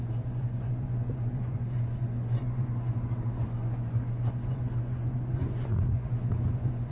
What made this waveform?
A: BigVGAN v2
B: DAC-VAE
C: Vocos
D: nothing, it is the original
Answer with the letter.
C